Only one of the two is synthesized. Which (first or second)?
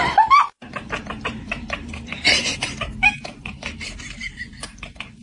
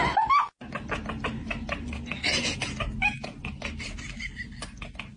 first